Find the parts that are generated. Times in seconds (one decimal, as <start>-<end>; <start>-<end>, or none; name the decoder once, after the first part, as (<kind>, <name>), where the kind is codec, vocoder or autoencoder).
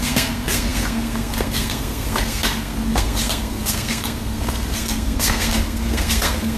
0.0-6.6 (codec, SNAC)